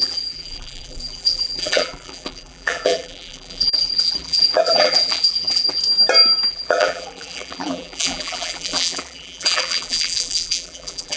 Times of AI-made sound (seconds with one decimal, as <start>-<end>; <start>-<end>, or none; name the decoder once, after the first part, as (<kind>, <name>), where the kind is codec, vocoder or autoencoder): 0.0-5.8 (vocoder, BigVGAN v2); 6.5-11.2